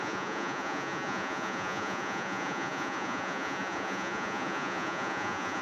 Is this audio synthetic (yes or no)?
yes